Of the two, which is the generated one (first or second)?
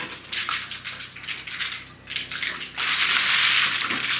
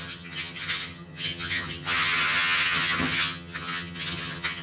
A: second